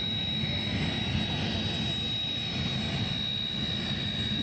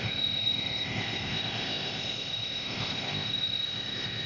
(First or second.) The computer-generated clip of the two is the second